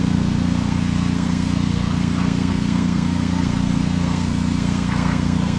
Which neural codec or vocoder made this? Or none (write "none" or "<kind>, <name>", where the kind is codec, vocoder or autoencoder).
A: codec, SNAC